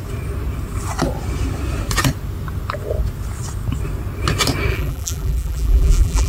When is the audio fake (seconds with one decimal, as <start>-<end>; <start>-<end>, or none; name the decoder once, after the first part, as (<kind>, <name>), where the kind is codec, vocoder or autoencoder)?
4.7-6.3 (vocoder, BigVGAN v2)